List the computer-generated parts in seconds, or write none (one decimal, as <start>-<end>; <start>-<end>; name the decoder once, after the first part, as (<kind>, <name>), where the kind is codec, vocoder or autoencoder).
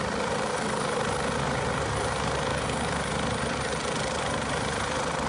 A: 0.5-1.0 (codec, DAC); 2.5-3.1